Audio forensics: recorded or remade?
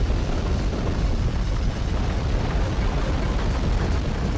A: recorded